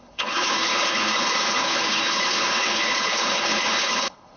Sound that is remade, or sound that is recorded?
remade